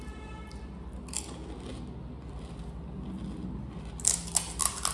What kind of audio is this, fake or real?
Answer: real